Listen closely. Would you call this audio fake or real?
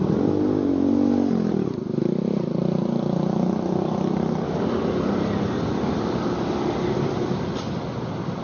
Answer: real